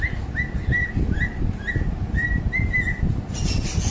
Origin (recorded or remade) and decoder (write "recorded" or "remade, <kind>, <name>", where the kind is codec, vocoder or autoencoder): recorded